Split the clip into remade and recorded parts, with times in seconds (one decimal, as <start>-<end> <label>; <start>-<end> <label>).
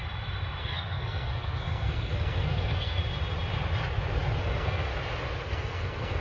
0.0-0.6 recorded; 0.6-3.0 remade; 3.0-4.4 recorded; 4.4-4.9 remade; 4.9-5.5 recorded; 5.5-6.2 remade